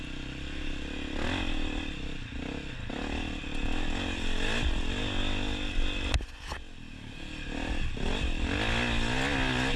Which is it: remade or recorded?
recorded